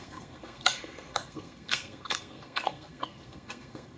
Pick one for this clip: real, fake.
fake